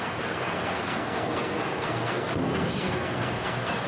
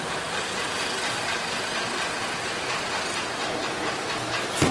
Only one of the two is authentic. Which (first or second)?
second